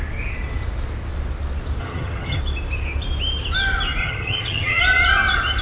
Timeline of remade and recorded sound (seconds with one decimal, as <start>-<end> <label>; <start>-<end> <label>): 0.0-1.8 recorded; 1.8-2.4 remade; 2.4-4.0 recorded; 4.0-4.8 remade; 4.8-5.6 recorded